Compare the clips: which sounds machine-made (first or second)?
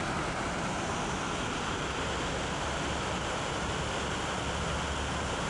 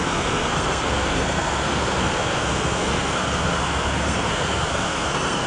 second